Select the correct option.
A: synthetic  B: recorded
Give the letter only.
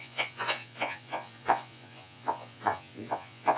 A